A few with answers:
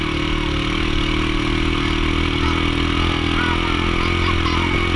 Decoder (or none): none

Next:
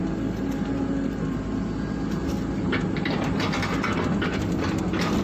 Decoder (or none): none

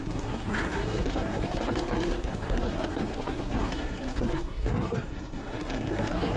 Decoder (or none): codec, SNAC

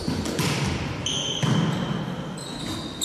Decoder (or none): none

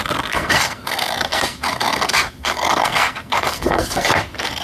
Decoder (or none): codec, SNAC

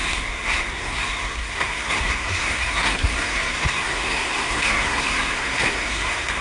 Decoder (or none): codec, SNAC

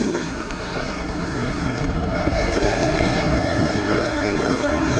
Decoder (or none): codec, SNAC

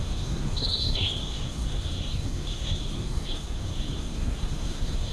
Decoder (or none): codec, SNAC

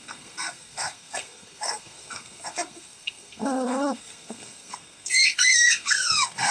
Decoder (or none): codec, SNAC